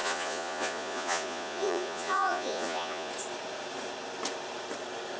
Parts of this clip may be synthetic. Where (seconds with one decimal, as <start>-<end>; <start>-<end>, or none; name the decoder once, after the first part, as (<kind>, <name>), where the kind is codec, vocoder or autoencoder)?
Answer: 0.0-3.1 (vocoder, Vocos)